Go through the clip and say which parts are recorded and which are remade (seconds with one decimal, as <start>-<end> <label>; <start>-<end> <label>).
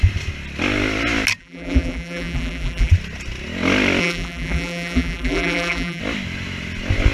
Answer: 0.0-1.4 recorded; 1.4-2.9 remade; 2.9-4.0 recorded; 4.0-6.0 remade; 6.0-7.1 recorded